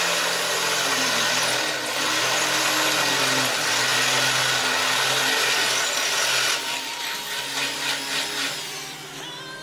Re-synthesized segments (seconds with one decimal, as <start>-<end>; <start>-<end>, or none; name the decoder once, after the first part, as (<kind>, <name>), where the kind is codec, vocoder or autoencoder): none